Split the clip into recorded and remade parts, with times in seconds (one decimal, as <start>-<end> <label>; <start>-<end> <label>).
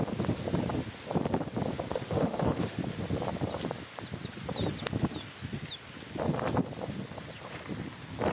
0.0-1.9 recorded; 1.9-2.8 remade; 2.8-8.3 recorded